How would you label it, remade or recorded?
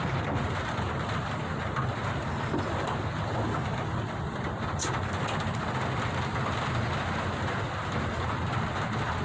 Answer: recorded